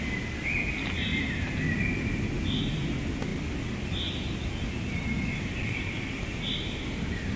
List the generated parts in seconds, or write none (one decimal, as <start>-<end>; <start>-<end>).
none